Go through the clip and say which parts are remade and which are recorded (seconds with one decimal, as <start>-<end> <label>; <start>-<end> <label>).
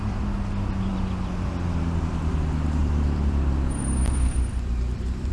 0.0-2.8 recorded; 2.8-5.3 remade